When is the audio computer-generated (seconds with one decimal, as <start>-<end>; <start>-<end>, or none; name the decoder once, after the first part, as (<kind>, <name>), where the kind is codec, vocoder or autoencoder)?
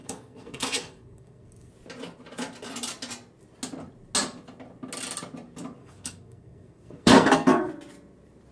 0.0-1.7 (codec, SNAC); 5.8-7.7